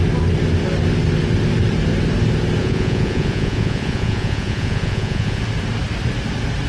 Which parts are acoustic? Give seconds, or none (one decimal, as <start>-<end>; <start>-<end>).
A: 0.0-2.6; 5.4-6.7